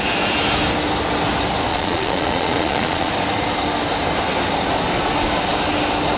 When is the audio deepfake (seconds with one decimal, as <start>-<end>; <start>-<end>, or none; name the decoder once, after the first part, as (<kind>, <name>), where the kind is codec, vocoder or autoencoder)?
1.7-3.1 (vocoder, Vocos)